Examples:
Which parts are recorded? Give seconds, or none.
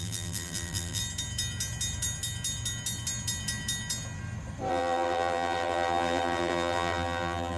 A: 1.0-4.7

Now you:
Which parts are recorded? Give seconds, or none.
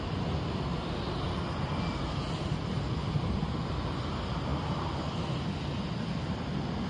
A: 0.0-6.9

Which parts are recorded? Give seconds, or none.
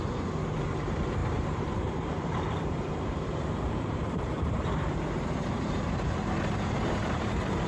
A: none